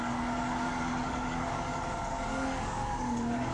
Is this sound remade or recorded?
remade